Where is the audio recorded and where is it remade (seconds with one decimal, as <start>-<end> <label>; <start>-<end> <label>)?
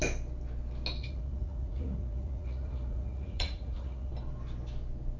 0.0-1.0 recorded; 1.0-4.1 remade; 4.1-5.2 recorded